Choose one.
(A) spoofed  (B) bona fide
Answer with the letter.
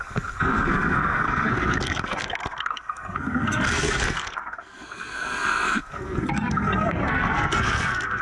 A